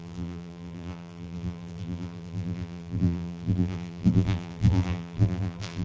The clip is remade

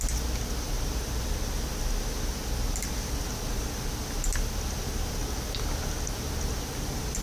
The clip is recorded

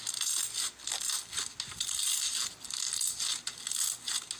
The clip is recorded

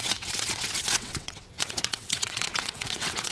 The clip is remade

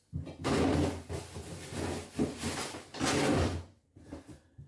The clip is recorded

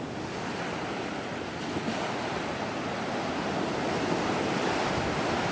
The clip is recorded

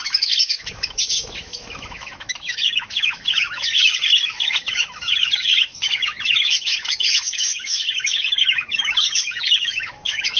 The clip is remade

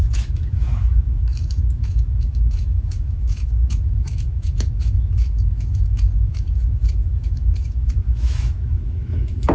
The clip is remade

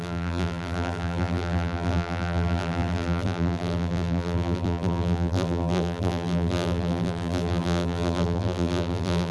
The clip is remade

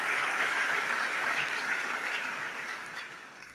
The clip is remade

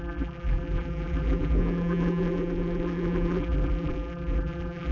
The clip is remade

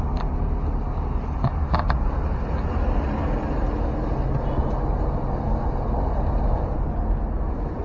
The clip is recorded